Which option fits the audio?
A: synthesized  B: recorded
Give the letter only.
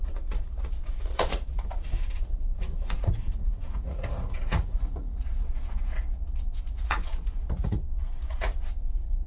A